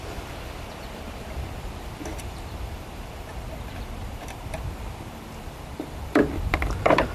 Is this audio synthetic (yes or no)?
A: yes